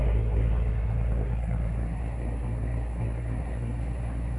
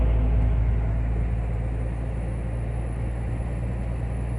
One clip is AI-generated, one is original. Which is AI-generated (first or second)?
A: first